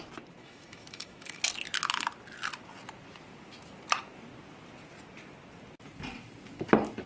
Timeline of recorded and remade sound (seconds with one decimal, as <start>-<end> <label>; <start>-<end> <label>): 0.0-0.4 recorded; 0.4-1.4 remade; 1.4-7.1 recorded